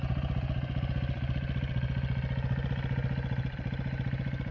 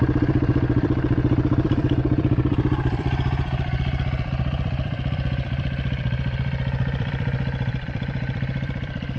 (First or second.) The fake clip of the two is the second